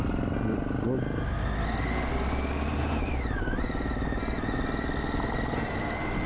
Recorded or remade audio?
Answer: recorded